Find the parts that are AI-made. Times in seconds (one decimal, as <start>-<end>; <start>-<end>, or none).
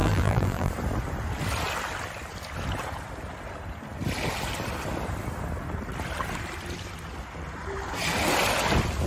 0.0-0.7